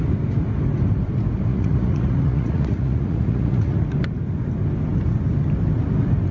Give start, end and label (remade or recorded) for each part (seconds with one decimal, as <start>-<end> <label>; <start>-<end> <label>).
0.0-1.5 recorded; 1.5-3.8 remade; 3.8-6.3 recorded